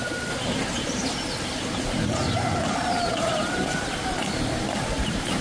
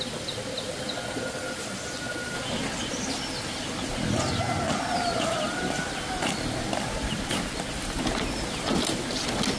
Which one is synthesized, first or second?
first